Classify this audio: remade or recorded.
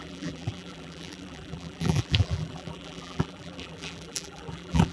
remade